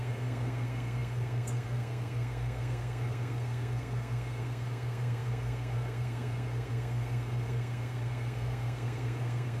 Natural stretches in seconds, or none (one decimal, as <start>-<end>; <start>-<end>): none